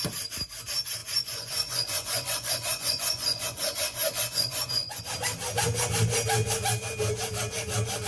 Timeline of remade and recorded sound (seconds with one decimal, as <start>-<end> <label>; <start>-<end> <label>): 0.0-1.0 recorded; 1.0-5.0 remade; 5.0-8.1 recorded